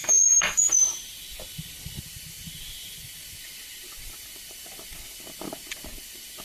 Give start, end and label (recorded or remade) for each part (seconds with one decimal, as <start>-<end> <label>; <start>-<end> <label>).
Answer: 0.0-0.6 remade; 0.6-6.4 recorded